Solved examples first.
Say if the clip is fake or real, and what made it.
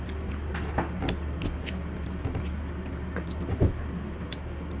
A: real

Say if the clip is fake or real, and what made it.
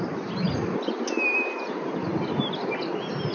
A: real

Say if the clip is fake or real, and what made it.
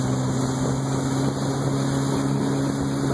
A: real